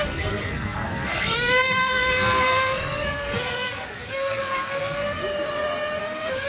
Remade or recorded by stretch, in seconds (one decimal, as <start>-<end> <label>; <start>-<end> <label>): 0.0-5.2 remade; 5.2-6.0 recorded; 6.0-6.5 remade